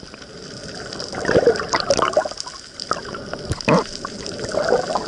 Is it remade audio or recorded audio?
recorded